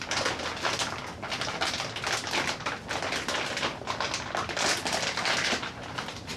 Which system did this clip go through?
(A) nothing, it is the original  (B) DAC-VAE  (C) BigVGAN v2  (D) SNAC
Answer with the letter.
A